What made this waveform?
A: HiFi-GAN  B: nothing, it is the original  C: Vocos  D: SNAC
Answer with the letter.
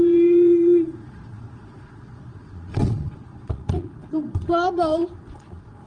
C